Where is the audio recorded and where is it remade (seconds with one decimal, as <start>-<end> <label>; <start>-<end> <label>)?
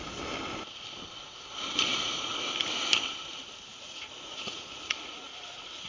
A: 0.0-1.9 recorded; 1.9-2.5 remade; 2.5-3.7 recorded; 3.7-5.9 remade